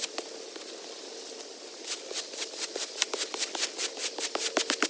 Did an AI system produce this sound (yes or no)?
no